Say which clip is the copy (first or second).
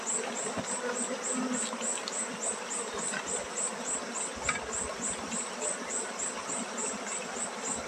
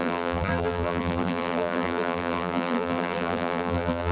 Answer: second